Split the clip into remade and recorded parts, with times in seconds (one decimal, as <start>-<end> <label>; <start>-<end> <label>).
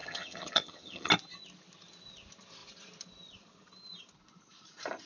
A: 0.0-1.1 remade; 1.1-5.1 recorded